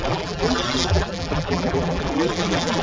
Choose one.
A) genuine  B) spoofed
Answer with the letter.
B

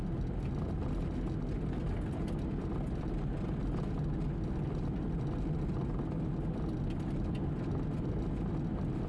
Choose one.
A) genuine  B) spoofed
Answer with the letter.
A